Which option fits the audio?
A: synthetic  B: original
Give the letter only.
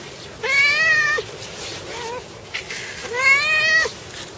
B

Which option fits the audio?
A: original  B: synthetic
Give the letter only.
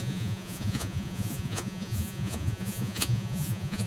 B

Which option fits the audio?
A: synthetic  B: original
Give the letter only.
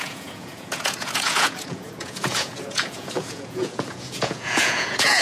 A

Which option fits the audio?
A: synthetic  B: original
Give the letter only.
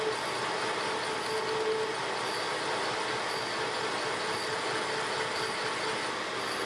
B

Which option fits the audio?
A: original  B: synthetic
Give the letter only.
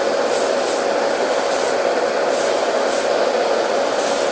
A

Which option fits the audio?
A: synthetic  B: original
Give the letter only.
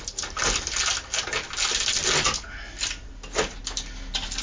B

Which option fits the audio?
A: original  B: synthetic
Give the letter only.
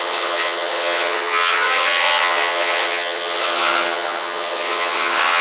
B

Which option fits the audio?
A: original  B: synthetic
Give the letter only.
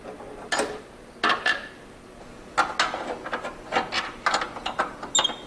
A